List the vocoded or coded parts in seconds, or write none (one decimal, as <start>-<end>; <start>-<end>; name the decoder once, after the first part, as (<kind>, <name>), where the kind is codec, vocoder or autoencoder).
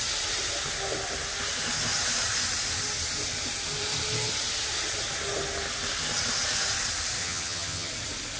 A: 7.2-7.9 (vocoder, HiFi-GAN)